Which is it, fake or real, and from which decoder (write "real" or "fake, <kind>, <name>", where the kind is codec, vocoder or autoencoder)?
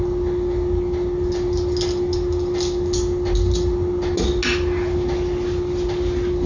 real